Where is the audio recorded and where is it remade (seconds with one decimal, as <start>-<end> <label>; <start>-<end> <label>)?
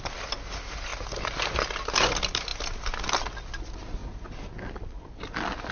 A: 0.0-5.7 recorded